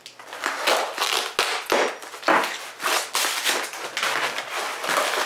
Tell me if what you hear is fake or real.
real